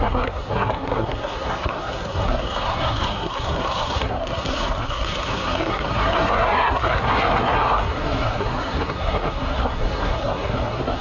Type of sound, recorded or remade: remade